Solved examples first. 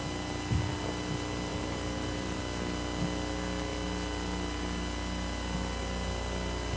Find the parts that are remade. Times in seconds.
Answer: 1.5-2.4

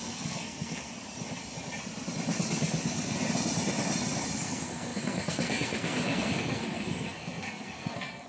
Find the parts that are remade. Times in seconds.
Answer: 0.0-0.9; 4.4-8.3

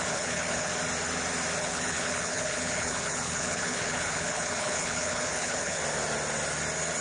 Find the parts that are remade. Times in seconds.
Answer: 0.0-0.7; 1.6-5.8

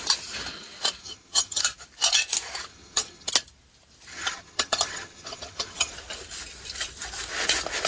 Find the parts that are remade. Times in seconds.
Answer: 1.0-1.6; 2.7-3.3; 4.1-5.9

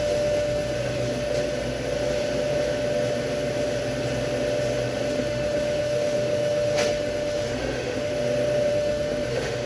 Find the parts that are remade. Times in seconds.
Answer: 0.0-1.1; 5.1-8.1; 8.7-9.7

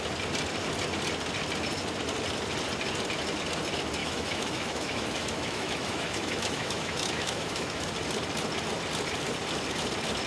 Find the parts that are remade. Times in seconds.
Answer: 4.0-7.9

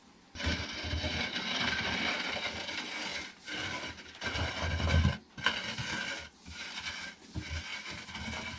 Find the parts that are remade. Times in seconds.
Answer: 3.1-5.3; 7.7-8.2

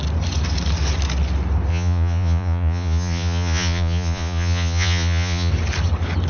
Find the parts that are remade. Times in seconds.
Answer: 1.7-5.5